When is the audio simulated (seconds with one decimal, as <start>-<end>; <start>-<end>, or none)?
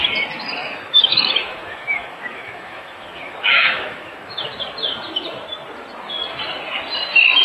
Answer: 0.6-4.5